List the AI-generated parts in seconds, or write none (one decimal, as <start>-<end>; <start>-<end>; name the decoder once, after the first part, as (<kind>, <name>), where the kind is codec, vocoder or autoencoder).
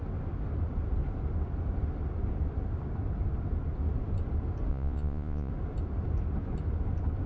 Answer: 4.7-5.5 (vocoder, Vocos)